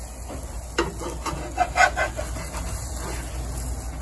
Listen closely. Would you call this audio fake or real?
real